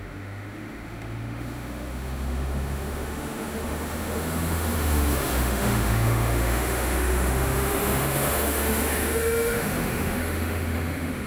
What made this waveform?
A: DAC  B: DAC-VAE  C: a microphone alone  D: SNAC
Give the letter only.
B